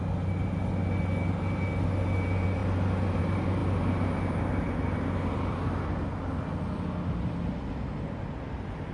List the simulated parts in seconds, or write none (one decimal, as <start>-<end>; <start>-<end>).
none